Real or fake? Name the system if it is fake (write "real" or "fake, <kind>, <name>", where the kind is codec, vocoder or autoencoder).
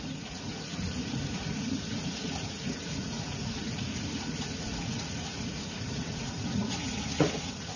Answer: fake, vocoder, Vocos